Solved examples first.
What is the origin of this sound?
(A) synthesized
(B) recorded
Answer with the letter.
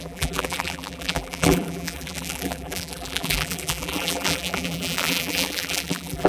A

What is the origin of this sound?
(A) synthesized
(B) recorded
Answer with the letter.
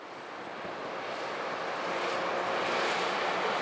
B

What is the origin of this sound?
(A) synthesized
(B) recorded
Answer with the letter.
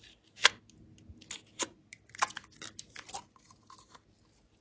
B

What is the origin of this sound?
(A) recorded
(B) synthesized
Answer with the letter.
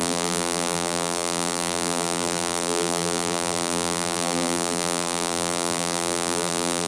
B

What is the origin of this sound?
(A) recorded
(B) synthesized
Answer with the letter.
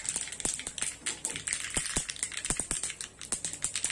A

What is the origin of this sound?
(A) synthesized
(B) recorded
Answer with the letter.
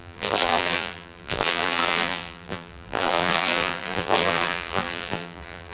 A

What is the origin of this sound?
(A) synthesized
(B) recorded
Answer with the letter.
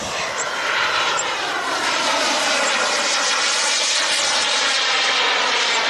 A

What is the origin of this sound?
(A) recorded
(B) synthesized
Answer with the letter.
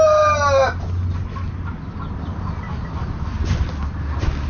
A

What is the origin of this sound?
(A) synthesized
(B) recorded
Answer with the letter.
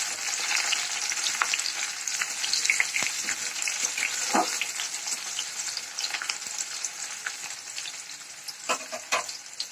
B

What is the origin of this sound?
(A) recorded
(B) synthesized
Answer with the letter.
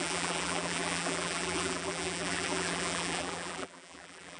B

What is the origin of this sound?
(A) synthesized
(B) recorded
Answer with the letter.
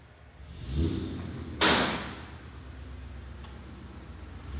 B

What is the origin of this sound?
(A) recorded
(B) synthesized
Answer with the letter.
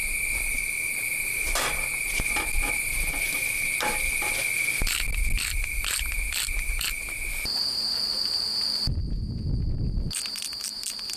A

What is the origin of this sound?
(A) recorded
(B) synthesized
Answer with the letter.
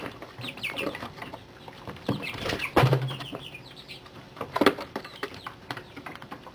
B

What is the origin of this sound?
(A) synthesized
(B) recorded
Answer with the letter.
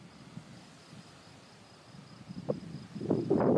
A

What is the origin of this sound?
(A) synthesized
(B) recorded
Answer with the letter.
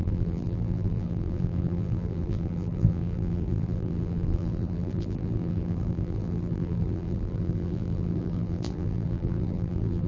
A